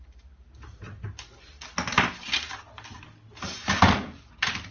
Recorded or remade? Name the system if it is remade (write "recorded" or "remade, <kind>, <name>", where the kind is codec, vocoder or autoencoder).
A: recorded